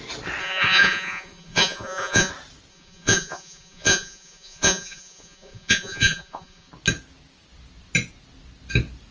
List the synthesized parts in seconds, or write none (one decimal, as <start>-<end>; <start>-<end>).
0.4-2.3; 2.7-6.7